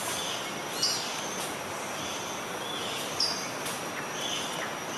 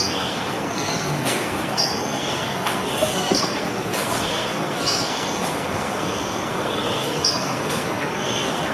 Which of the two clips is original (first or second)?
first